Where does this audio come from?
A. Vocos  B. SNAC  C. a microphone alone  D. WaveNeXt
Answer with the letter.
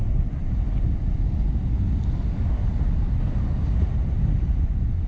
C